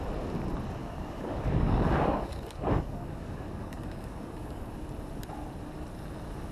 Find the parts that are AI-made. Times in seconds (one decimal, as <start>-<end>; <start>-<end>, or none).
0.8-4.7